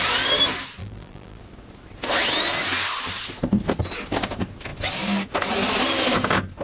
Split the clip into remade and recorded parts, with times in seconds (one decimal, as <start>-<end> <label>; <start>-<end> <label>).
0.0-0.8 recorded; 0.8-1.4 remade; 1.4-6.6 recorded